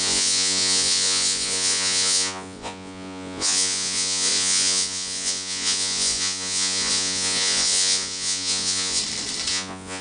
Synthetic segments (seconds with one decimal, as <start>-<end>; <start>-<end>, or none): 0.0-9.0; 9.5-10.0